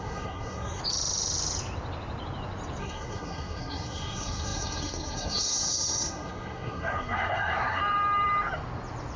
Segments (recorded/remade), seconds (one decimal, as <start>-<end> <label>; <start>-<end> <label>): 0.0-0.8 remade; 0.8-2.8 recorded; 2.8-7.8 remade; 7.8-9.2 recorded